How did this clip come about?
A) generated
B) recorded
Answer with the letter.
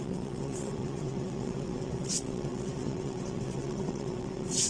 A